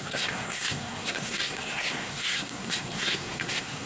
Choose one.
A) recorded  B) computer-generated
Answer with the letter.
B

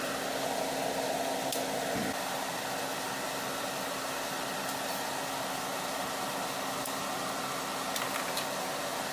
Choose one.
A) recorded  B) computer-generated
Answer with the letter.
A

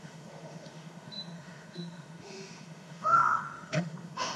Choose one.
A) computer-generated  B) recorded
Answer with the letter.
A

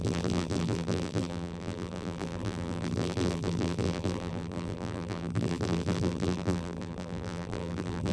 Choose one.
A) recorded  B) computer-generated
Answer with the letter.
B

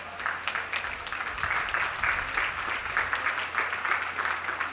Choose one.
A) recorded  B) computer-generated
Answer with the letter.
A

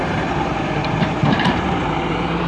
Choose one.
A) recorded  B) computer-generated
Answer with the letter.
B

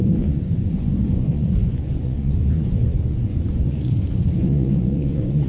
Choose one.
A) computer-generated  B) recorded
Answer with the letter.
A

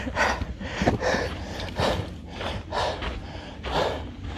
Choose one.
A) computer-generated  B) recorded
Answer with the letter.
B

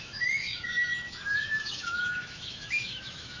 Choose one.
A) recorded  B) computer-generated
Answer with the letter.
B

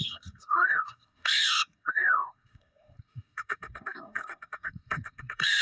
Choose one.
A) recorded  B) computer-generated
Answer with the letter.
B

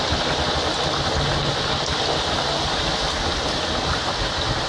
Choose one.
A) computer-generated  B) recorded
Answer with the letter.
B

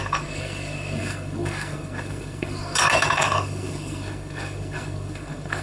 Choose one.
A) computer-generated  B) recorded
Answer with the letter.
A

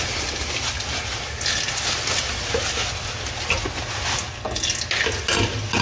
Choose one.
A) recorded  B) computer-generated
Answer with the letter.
A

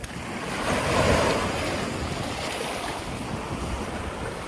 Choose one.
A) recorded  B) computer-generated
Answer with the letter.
A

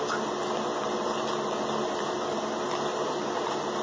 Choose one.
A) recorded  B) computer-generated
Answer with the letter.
A